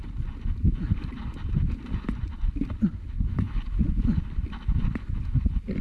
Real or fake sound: real